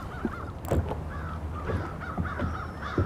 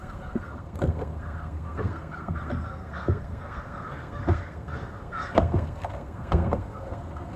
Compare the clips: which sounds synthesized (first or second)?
second